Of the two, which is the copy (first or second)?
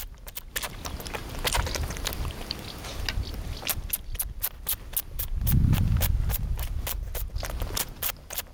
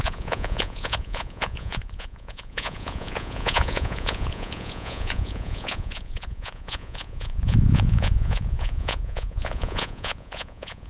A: second